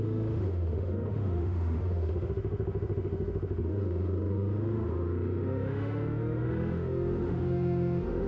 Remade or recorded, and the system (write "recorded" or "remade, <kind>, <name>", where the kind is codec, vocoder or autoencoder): remade, autoencoder, DAC-VAE